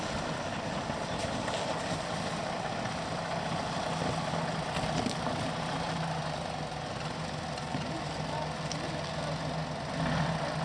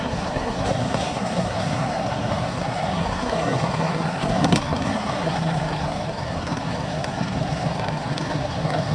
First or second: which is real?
first